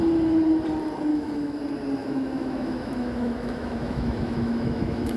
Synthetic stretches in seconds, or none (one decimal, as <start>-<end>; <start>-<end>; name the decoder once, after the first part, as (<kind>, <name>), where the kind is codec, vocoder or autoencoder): 1.1-1.6 (autoencoder, DAC-VAE); 2.0-5.2